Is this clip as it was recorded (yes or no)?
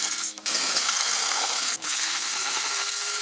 no